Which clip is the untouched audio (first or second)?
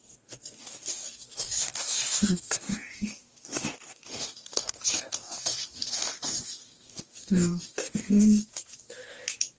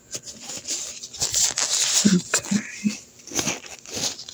second